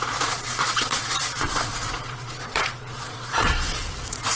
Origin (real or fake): fake